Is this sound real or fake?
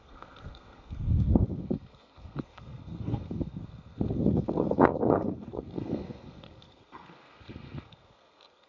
fake